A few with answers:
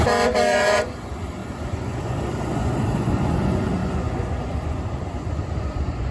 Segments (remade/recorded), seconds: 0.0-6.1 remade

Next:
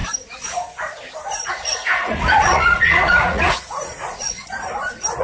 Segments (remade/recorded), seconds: 0.0-1.5 recorded; 1.5-4.4 remade; 4.4-5.2 recorded

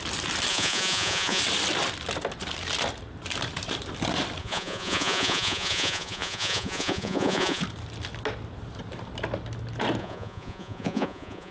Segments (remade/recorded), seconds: 0.0-0.5 recorded; 0.5-1.4 remade; 1.4-4.4 recorded; 4.4-7.6 remade; 7.6-10.0 recorded; 10.0-11.5 remade

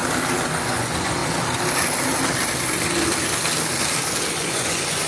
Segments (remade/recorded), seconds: 0.0-0.5 recorded; 0.5-1.2 remade; 1.2-4.3 recorded; 4.3-5.1 remade